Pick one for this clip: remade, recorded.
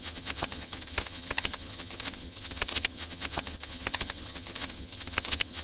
remade